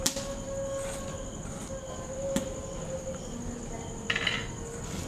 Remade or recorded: recorded